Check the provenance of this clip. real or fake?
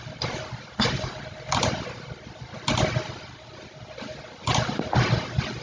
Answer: real